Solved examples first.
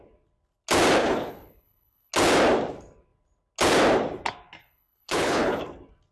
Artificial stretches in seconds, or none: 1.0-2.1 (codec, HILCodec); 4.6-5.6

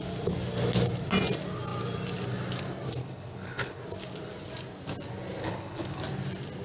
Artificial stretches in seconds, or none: 3.0-3.8 (codec, HILCodec); 5.4-6.0

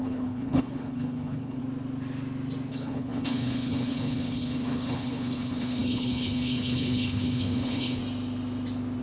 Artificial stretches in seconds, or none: 0.0-1.6 (codec, HILCodec); 2.7-8.0

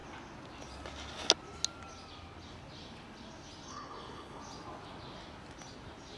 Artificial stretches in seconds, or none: 3.7-4.4 (codec, HILCodec)

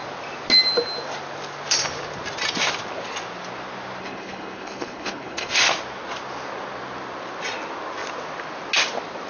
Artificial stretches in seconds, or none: 4.0-5.6 (codec, HILCodec)